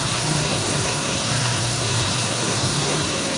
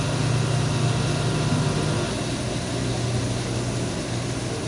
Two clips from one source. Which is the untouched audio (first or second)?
second